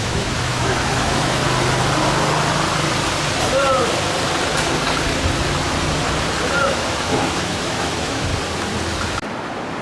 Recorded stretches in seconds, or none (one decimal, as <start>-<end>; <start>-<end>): 1.4-6.6; 8.3-9.8